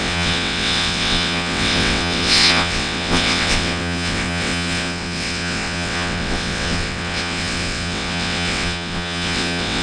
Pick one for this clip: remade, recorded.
remade